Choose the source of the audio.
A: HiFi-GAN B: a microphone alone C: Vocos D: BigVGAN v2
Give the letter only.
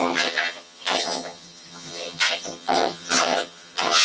A